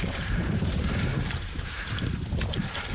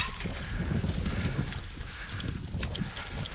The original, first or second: second